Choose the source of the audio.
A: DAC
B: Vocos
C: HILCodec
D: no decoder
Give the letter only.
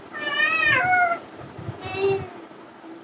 D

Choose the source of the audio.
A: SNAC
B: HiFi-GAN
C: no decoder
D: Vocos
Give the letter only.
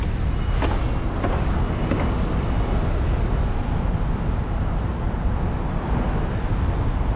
C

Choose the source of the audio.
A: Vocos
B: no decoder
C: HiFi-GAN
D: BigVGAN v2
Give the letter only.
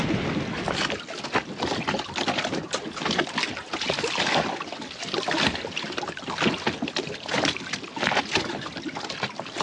B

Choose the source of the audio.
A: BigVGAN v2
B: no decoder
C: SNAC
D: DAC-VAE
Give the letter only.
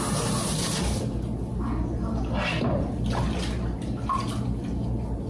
B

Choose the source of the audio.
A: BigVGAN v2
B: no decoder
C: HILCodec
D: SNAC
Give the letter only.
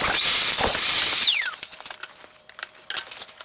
B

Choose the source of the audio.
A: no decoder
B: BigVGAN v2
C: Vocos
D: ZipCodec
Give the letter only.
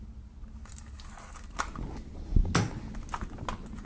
A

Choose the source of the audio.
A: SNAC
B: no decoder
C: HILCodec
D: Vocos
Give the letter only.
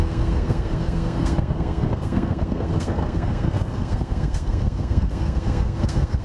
A